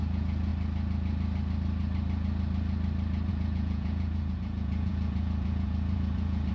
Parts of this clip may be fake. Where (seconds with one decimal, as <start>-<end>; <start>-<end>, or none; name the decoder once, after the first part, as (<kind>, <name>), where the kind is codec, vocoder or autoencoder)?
0.0-0.5 (vocoder, Vocos); 3.3-6.5